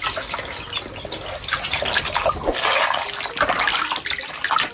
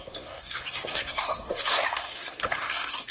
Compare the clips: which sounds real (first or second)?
first